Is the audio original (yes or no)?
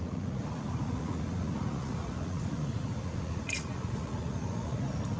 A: no